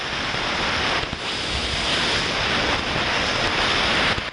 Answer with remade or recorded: recorded